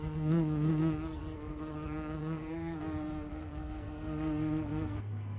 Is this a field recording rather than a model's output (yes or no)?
no